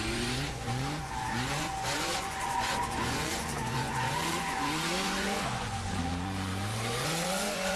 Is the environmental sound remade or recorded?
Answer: remade